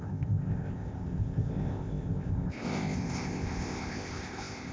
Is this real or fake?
fake